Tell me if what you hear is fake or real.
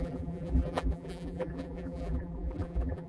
fake